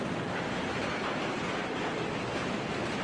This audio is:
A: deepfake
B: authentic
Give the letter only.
B